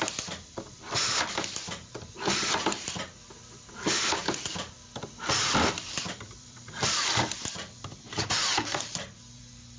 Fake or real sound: fake